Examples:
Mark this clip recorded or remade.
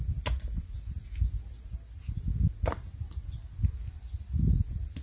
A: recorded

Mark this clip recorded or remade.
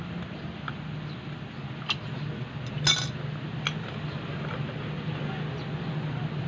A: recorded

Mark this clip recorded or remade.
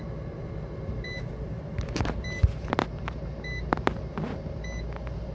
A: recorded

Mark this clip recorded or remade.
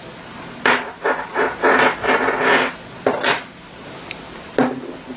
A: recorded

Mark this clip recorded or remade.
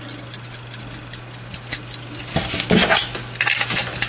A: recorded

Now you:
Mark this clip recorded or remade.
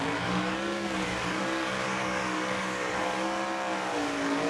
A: remade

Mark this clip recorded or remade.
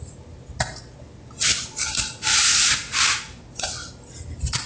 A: recorded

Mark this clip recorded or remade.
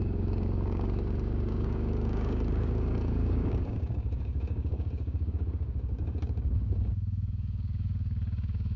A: remade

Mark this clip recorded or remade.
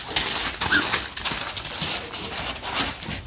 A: recorded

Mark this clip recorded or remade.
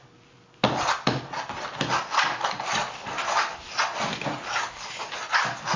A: recorded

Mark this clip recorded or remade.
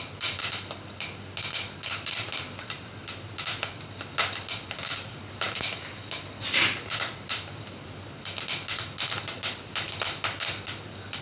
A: recorded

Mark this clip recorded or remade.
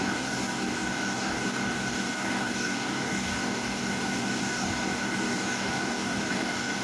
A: remade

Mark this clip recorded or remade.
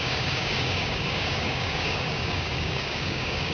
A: remade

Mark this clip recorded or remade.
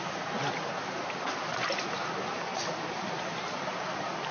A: recorded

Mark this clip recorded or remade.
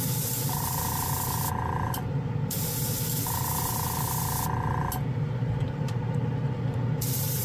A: recorded